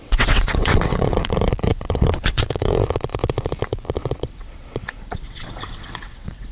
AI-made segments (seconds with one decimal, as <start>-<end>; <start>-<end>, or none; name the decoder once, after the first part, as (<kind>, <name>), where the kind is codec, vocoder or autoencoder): 0.0-6.5 (vocoder, WaveNeXt)